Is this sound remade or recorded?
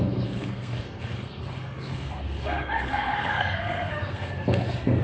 remade